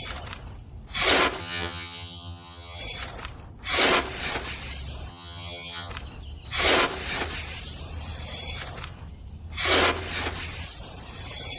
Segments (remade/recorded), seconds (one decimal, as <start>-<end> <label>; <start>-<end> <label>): 0.0-1.4 recorded; 1.4-2.8 remade; 2.8-5.1 recorded; 5.1-5.9 remade; 5.9-11.6 recorded